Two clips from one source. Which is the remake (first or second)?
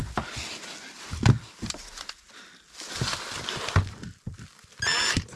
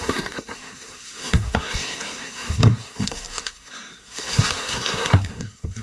second